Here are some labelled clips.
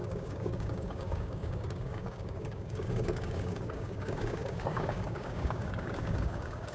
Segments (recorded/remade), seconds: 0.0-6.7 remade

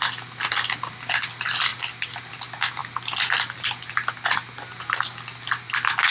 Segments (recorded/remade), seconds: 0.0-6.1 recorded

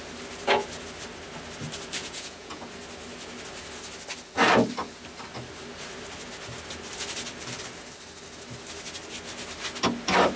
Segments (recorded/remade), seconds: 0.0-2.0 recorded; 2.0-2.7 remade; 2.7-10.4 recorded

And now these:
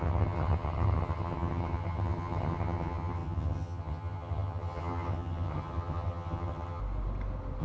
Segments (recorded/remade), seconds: 0.0-6.8 remade; 6.8-7.6 recorded

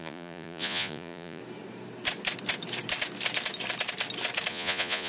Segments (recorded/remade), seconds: 0.0-1.4 remade; 1.4-4.5 recorded; 4.5-5.1 remade